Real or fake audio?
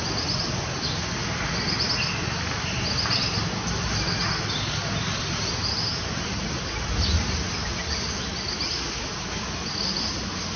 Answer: real